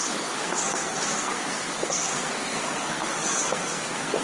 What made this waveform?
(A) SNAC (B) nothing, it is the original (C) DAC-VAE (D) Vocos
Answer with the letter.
A